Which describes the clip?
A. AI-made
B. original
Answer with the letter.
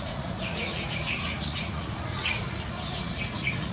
A